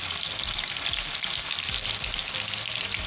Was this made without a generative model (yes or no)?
yes